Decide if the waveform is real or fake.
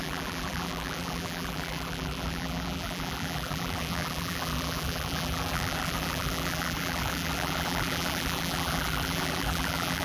fake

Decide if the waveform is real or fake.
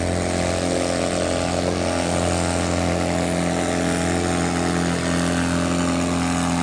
real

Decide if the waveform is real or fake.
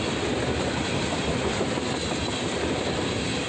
real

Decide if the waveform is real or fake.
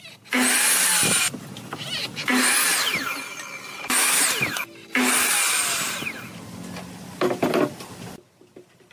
real